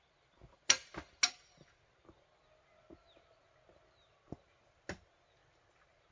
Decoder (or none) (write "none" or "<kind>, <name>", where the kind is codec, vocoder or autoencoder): none